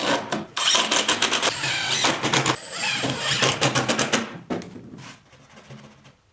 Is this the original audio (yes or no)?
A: yes